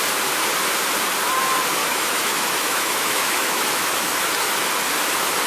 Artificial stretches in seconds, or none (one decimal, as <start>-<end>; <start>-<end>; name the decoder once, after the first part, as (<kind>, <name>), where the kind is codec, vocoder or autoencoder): 1.8-4.7 (autoencoder, DAC-VAE)